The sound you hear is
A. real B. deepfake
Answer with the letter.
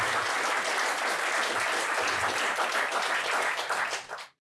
A